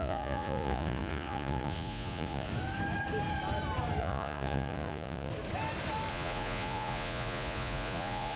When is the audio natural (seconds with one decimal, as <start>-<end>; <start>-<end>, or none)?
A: 2.5-4.0; 5.3-6.1